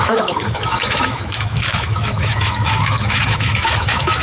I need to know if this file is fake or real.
fake